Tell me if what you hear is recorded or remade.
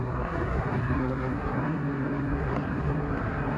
remade